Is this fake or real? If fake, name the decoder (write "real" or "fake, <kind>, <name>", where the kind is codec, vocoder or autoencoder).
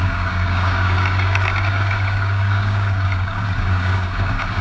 fake, codec, DAC